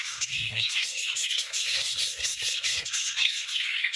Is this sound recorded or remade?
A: remade